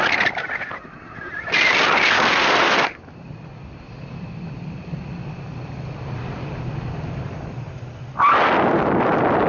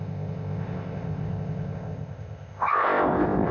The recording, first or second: first